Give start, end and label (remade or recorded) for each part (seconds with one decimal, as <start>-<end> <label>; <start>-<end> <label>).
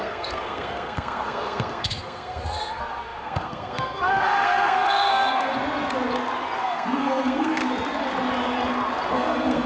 0.0-5.5 remade; 5.5-6.6 recorded; 6.6-7.6 remade; 7.6-9.1 recorded; 9.1-9.7 remade